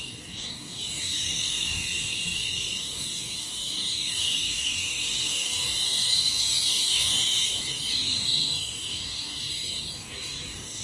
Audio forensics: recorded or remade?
remade